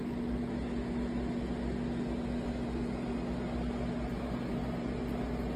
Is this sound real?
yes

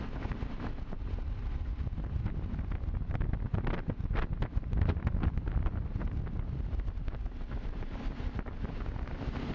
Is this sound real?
yes